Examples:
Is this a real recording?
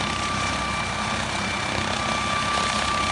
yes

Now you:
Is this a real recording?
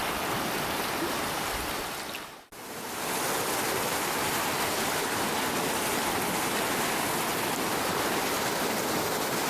yes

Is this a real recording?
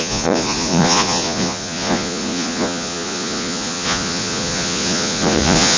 no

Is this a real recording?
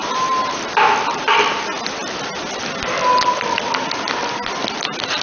yes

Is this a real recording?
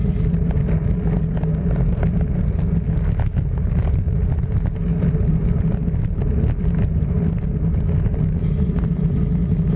yes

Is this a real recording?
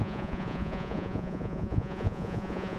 no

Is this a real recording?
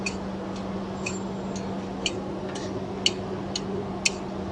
yes